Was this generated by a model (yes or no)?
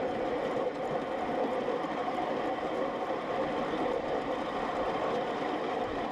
no